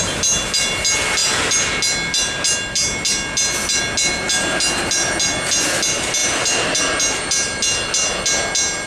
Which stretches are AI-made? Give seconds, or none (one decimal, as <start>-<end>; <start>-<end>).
none